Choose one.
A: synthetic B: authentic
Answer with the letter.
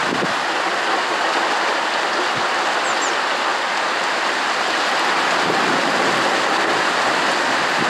B